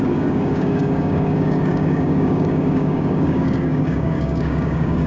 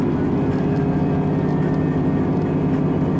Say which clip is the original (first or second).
second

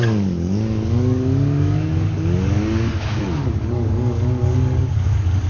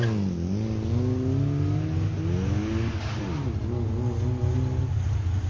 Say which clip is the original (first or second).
second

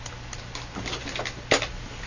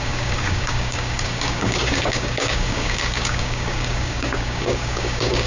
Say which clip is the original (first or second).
first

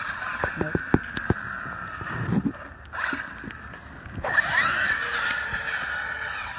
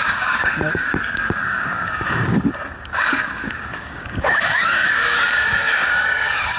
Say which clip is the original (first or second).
first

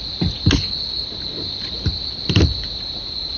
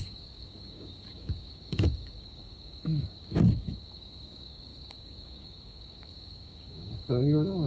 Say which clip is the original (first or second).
first